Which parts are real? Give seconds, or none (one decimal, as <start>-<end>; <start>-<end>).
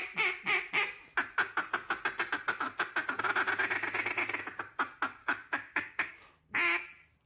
0.0-5.2; 6.3-7.3